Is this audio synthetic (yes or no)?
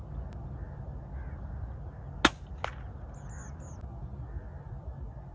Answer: no